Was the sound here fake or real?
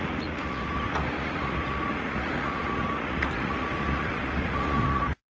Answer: fake